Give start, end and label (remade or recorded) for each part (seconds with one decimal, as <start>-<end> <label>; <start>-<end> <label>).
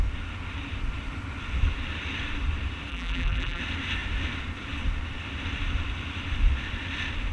0.0-2.9 recorded; 2.9-3.6 remade; 3.6-7.3 recorded